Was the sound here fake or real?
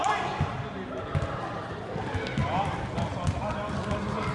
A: real